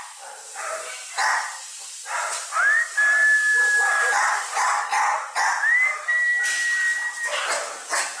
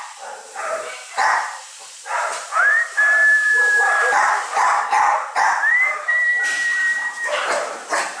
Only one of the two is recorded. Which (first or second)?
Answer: first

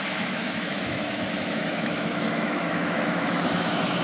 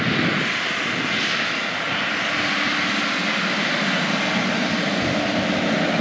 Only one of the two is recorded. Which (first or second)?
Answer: second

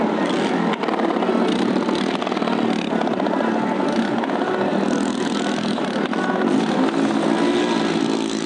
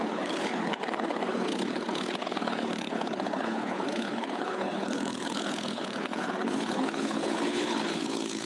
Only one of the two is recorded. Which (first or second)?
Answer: first